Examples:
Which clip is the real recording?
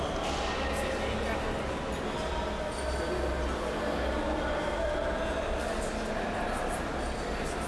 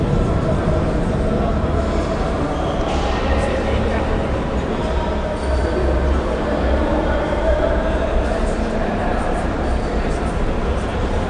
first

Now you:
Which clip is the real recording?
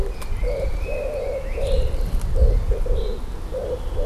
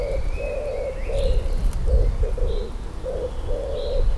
second